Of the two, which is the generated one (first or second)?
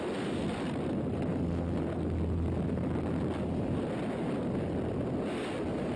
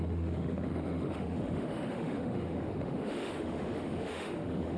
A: second